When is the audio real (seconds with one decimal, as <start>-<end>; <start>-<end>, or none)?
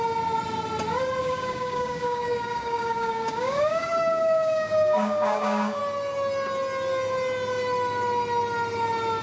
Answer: 0.0-1.2; 5.8-9.2